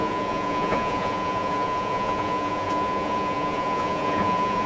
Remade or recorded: remade